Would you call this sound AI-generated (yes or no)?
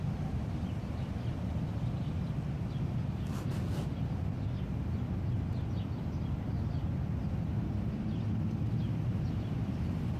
no